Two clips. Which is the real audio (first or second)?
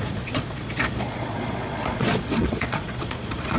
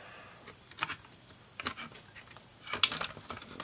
second